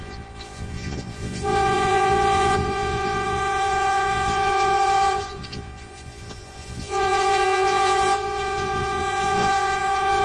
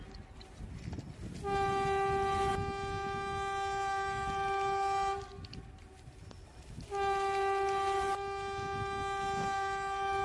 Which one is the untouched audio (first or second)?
second